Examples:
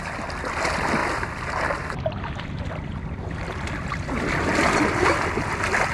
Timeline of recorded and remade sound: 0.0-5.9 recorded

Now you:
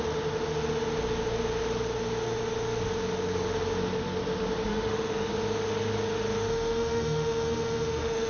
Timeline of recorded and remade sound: 0.0-4.7 recorded; 4.7-5.3 remade; 5.3-6.5 recorded; 6.5-8.3 remade

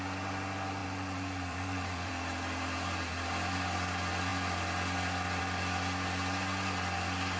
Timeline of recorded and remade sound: 0.0-0.8 recorded; 0.8-2.1 remade; 2.1-7.4 recorded

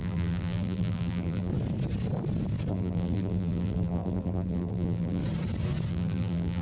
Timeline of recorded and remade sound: 0.0-1.5 remade; 1.5-2.7 recorded; 2.7-5.2 remade; 5.2-5.9 recorded; 5.9-6.6 remade